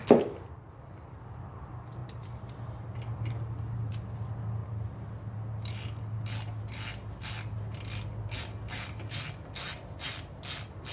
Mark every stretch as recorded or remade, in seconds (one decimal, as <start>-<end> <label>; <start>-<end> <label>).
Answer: 0.0-10.9 recorded